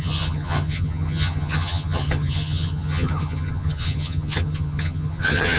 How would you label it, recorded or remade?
remade